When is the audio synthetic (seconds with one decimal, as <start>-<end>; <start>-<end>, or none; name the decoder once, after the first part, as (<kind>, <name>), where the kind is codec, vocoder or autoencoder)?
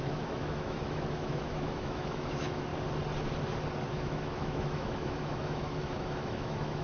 0.0-2.7 (autoencoder, DAC-VAE); 3.9-6.8